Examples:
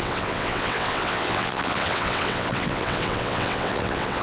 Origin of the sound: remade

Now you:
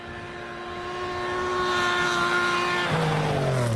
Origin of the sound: recorded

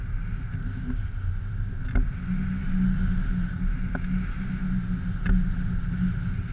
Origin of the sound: recorded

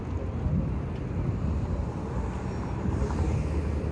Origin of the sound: recorded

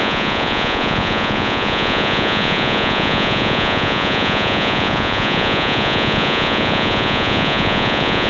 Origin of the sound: remade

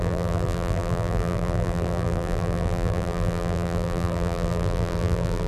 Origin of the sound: remade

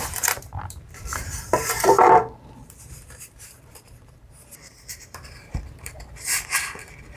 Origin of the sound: remade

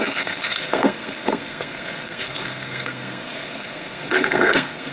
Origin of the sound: remade